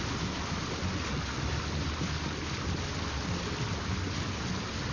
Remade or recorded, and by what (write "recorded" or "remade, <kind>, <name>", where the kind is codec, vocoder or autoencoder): recorded